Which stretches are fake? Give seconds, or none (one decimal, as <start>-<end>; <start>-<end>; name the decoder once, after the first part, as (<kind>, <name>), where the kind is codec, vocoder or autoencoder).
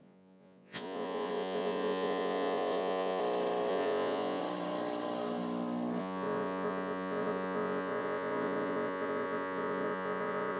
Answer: 0.0-3.2 (vocoder, Vocos); 3.7-4.4; 6.0-10.6